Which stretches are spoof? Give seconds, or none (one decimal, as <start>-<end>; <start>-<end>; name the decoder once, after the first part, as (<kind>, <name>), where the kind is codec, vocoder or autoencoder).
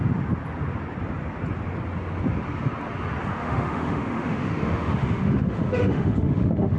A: 3.3-6.8 (autoencoder, DAC-VAE)